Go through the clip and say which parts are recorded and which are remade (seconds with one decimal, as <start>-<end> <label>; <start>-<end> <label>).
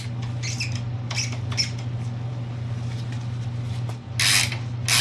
0.0-5.0 recorded